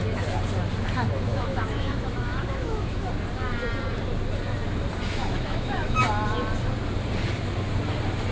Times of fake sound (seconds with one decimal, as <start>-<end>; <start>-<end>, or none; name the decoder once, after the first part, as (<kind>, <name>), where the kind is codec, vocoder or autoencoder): 1.3-3.1 (autoencoder, DAC-VAE); 5.2-6.0